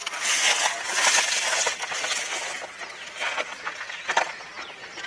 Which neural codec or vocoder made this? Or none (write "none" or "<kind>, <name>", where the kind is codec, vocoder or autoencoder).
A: none